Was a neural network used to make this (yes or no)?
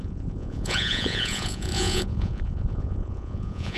yes